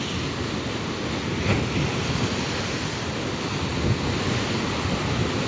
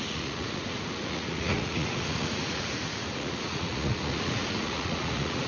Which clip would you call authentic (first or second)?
first